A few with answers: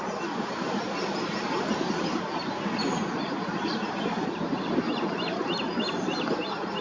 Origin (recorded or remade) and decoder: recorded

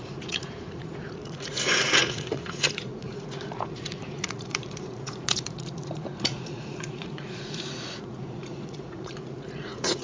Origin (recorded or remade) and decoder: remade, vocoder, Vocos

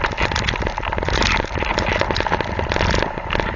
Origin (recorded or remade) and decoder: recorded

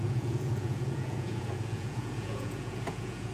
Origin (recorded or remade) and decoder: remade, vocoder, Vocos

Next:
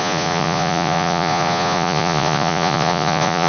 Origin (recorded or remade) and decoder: remade, vocoder, Vocos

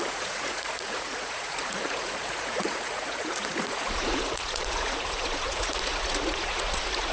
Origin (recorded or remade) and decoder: remade, vocoder, Vocos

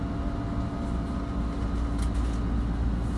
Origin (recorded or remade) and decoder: recorded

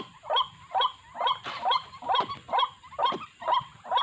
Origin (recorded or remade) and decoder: recorded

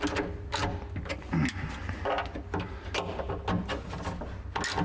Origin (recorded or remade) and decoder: recorded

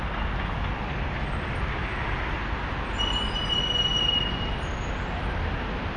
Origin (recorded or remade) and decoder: recorded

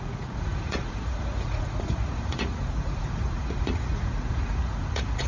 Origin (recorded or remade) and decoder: remade, vocoder, Vocos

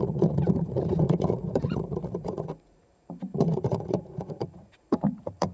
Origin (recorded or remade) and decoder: remade, vocoder, Vocos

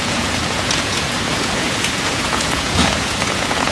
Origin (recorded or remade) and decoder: remade, vocoder, Vocos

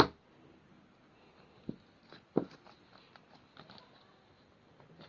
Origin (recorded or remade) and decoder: recorded